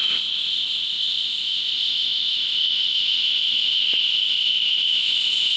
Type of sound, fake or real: fake